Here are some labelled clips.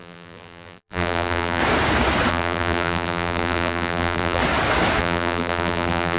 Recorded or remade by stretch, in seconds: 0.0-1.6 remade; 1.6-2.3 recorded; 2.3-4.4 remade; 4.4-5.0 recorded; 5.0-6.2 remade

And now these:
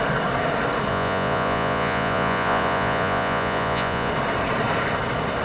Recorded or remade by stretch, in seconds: 0.0-0.9 recorded; 0.9-4.1 remade; 4.1-5.4 recorded

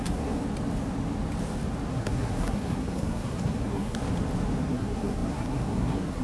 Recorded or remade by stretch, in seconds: 0.0-0.4 remade; 0.4-1.9 recorded; 1.9-4.0 remade; 4.0-4.6 recorded; 4.6-6.2 remade

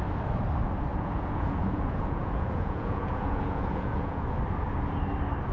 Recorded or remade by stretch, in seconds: 0.0-0.9 recorded; 0.9-4.2 remade; 4.2-5.5 recorded

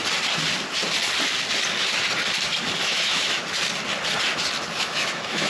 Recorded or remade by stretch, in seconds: 0.0-2.8 recorded; 2.8-3.4 remade; 3.4-4.8 recorded; 4.8-5.5 remade